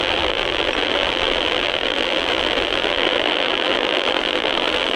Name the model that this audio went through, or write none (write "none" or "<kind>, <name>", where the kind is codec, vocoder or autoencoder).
vocoder, BigVGAN v2